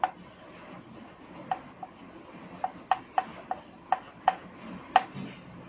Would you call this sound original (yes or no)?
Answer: yes